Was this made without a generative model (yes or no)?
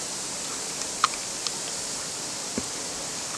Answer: yes